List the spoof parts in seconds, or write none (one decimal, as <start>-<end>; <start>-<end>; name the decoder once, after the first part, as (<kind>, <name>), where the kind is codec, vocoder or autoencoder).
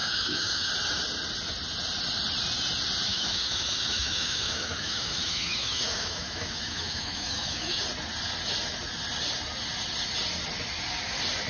0.0-0.7 (autoencoder, DAC-VAE); 3.1-7.8